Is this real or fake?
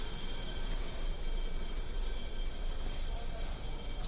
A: fake